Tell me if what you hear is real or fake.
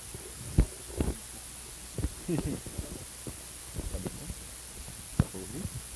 real